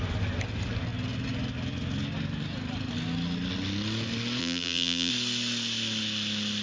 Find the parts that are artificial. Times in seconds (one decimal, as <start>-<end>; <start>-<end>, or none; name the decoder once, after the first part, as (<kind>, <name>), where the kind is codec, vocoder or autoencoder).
4.4-5.1 (vocoder, BigVGAN v2)